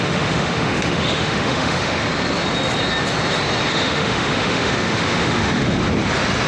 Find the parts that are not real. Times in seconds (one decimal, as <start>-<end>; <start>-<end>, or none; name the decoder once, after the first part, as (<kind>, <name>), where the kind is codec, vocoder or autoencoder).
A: 0.0-2.0 (autoencoder, DAC-VAE); 3.7-5.8